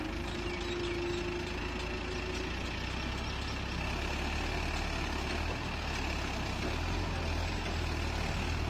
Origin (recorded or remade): recorded